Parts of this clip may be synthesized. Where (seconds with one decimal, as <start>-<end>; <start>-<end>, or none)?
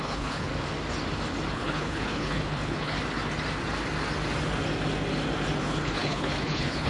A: 0.0-0.5; 1.5-3.0; 5.6-6.9